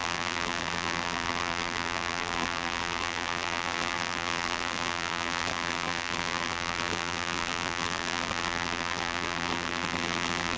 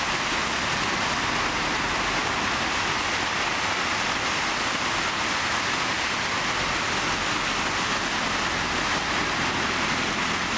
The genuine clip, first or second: second